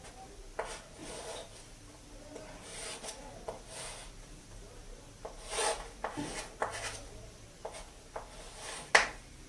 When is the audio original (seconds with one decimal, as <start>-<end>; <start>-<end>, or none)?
0.0-1.0; 1.6-9.5